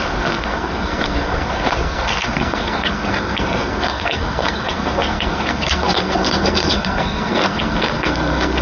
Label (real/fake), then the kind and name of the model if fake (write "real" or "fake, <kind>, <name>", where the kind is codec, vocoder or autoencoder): fake, codec, SNAC